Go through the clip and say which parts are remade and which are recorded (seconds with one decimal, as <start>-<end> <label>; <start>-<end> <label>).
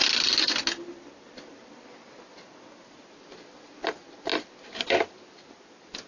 0.0-6.1 recorded